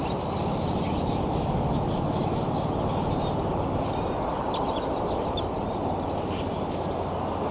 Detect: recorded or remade recorded